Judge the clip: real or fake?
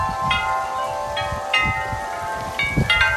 real